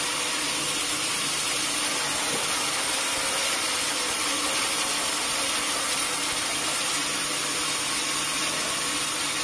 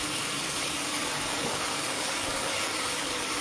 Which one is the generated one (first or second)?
second